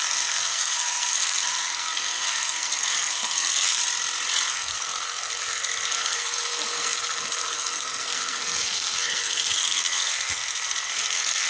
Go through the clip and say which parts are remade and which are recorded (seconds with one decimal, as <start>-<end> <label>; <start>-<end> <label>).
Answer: 0.0-3.8 remade; 3.8-4.5 recorded; 4.5-11.5 remade